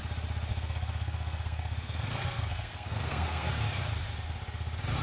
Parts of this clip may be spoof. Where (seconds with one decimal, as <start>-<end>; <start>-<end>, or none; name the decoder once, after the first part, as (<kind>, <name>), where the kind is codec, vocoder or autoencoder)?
0.5-3.5 (codec, SNAC)